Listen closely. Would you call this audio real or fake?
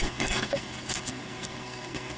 fake